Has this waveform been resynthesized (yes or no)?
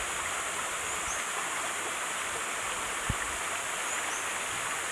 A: no